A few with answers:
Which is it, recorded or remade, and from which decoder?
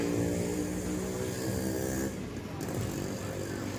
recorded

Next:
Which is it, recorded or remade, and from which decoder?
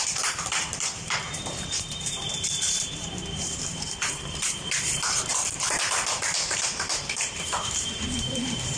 remade, vocoder, BigVGAN v2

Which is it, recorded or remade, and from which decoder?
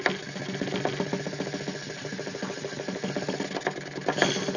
recorded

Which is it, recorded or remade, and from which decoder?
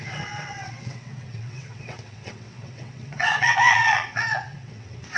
remade, vocoder, WaveNeXt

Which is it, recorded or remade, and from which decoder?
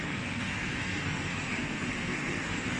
remade, codec, SNAC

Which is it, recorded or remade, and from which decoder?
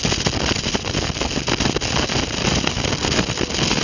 recorded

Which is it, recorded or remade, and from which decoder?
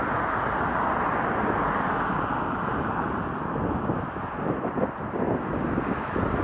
recorded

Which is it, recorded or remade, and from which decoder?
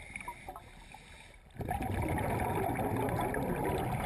recorded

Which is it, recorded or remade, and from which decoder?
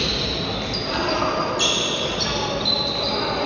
recorded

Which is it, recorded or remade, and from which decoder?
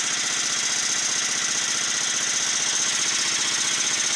recorded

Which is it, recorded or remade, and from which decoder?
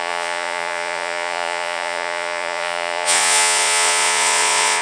remade, vocoder, Vocos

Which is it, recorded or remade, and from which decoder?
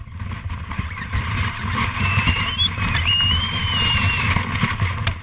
remade, vocoder, BigVGAN v2